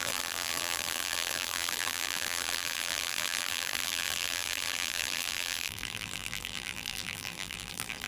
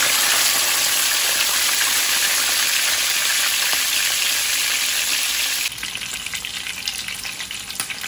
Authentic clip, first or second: second